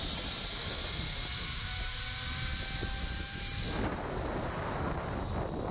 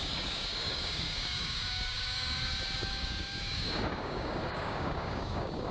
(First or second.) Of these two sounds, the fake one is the second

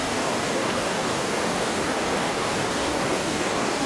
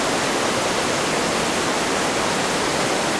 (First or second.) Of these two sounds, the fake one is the first